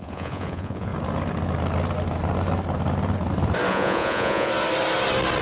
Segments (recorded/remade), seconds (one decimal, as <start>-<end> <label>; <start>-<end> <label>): 0.0-0.9 remade; 0.9-3.7 recorded; 3.7-4.5 remade; 4.5-5.4 recorded